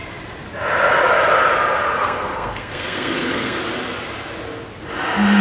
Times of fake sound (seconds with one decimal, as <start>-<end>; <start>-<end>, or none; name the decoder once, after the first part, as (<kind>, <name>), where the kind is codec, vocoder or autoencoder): 1.9-3.6 (codec, SNAC)